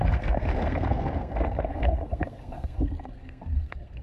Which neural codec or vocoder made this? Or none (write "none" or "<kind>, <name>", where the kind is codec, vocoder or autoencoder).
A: codec, SNAC